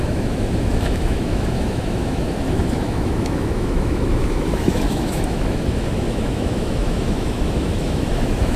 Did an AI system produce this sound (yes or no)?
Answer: yes